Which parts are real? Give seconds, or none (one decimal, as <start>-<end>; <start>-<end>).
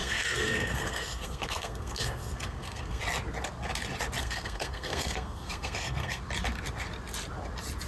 3.0-4.2; 6.2-7.9